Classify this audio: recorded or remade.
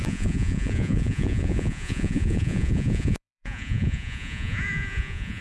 remade